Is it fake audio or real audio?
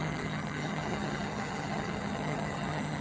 fake